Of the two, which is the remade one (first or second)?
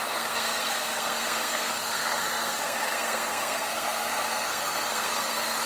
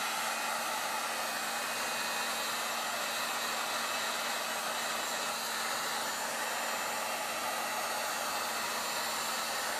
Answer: first